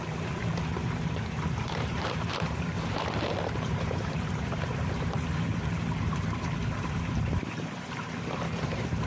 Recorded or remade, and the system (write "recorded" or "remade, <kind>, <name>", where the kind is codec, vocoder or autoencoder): remade, vocoder, BigVGAN v2